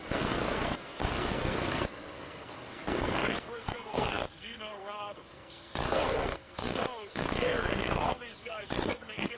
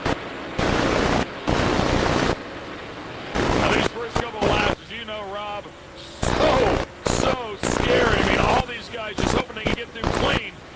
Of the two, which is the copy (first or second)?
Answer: first